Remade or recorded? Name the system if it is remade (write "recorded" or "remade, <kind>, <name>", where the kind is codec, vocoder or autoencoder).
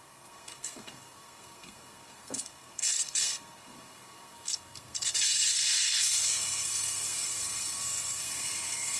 remade, codec, SNAC